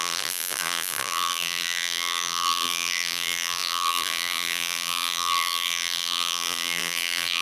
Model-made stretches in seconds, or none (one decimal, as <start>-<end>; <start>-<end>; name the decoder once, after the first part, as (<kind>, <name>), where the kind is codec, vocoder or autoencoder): 0.0-7.4 (vocoder, BigVGAN v2)